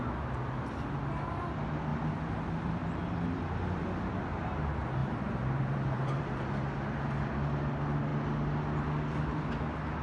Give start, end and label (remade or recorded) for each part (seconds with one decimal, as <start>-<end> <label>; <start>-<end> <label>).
0.0-1.9 recorded; 1.9-4.1 remade; 4.1-5.0 recorded; 5.0-6.4 remade; 6.4-10.0 recorded